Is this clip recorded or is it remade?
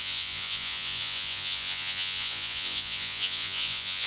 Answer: remade